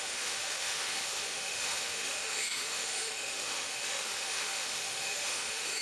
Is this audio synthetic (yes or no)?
yes